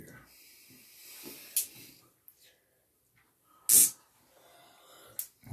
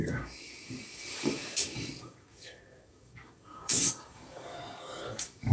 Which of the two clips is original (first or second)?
first